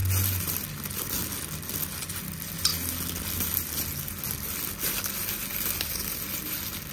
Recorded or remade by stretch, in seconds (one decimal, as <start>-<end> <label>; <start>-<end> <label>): 0.0-6.9 recorded